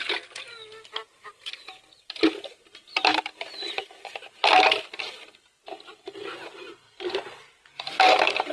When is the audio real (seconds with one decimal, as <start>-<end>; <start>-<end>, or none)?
0.0-3.1; 7.1-8.5

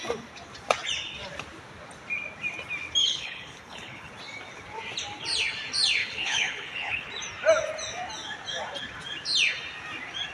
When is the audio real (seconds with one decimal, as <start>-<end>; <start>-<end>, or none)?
0.0-3.0; 4.1-6.0; 7.1-10.3

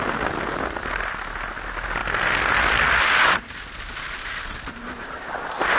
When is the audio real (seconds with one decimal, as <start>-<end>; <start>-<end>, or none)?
0.0-5.8

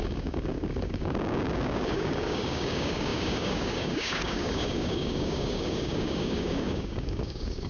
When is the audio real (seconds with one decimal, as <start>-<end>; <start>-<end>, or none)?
none

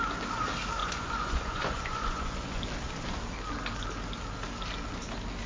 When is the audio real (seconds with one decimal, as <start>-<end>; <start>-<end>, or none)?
0.0-0.8; 2.6-5.5

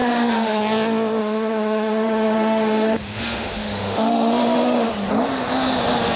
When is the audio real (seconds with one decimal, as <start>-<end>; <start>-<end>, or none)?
0.6-1.2; 4.9-6.2